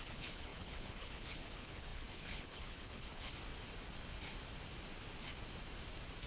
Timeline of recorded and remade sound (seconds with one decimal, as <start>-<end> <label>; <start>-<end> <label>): 0.0-3.3 remade; 3.3-6.3 recorded